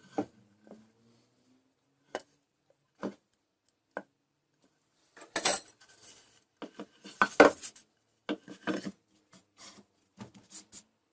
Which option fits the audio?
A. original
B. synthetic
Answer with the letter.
A